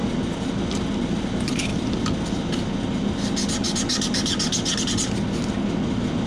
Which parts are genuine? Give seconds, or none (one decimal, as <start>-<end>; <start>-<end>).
0.0-6.3